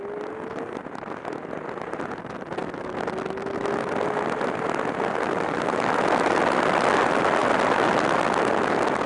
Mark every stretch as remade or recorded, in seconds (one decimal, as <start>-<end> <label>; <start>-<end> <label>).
0.0-9.1 recorded